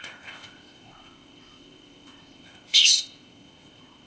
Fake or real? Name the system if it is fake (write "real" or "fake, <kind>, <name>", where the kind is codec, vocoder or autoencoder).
fake, codec, ZipCodec